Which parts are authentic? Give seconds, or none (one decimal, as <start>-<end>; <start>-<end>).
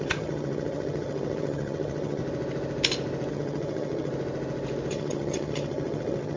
2.2-3.3; 4.1-4.9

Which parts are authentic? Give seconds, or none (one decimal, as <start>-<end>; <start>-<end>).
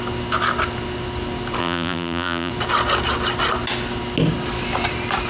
0.0-1.6; 2.5-5.3